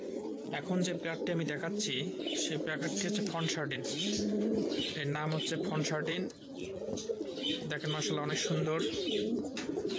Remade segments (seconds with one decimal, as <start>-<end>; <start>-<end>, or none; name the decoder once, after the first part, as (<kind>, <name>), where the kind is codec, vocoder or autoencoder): 0.0-7.1 (vocoder, Vocos); 8.3-10.0

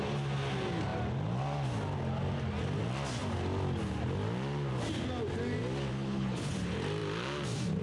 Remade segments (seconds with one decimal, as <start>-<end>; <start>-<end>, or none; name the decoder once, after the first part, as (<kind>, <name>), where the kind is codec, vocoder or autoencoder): 5.9-6.5 (codec, HILCodec)

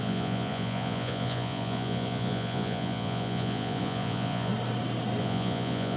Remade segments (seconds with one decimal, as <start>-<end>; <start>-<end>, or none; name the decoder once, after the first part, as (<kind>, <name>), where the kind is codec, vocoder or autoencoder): 0.0-4.5 (vocoder, Vocos); 5.2-6.0